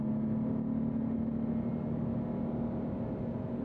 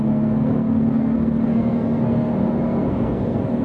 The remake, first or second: second